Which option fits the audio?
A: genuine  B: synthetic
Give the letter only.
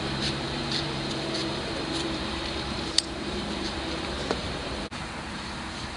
B